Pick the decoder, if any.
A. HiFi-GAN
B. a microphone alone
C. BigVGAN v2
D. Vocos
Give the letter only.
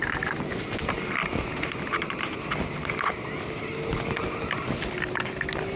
B